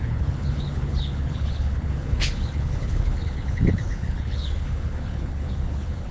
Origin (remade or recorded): remade